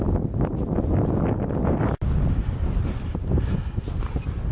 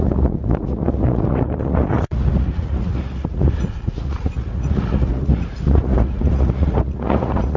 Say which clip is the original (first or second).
first